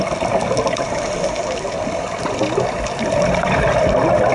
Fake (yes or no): no